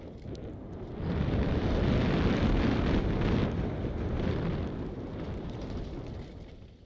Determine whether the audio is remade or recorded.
recorded